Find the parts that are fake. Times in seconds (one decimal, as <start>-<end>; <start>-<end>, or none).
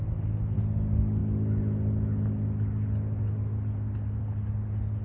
none